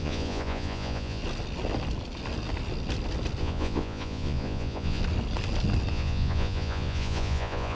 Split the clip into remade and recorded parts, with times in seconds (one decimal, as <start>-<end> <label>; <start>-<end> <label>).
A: 0.0-1.2 remade; 1.2-3.4 recorded; 3.4-5.0 remade; 5.0-5.9 recorded; 5.9-7.7 remade